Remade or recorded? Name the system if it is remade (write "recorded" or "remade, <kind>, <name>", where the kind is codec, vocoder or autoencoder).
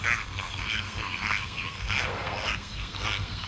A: remade, codec, SNAC